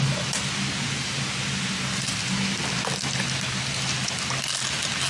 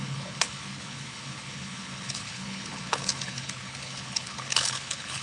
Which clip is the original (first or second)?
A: first